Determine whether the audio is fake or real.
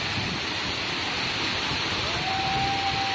real